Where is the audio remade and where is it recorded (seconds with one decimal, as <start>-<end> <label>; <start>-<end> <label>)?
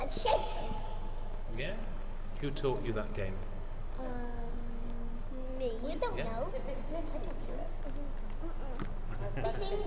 0.0-2.3 remade; 2.3-2.9 recorded; 2.9-5.5 remade; 5.5-9.9 recorded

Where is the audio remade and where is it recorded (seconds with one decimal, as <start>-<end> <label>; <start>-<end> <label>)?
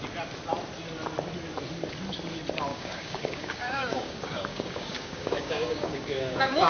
0.0-2.7 recorded; 2.7-6.7 remade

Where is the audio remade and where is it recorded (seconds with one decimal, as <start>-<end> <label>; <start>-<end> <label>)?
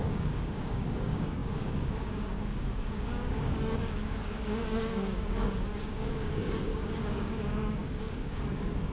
0.0-8.9 remade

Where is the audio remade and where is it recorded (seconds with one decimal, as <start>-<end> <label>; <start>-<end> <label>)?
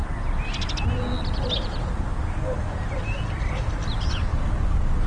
0.0-4.3 recorded; 4.3-5.1 remade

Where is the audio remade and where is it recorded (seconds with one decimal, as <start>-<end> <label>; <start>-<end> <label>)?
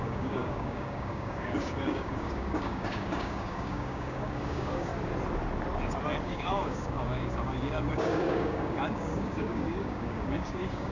0.0-4.9 remade; 4.9-6.2 recorded; 6.2-10.9 remade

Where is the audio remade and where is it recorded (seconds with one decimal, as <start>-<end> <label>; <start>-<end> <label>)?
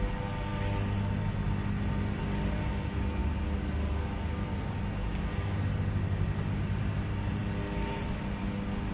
0.0-8.9 recorded